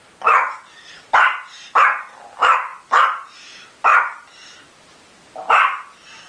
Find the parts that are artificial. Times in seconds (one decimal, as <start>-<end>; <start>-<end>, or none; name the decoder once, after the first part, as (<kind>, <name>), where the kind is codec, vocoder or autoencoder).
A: none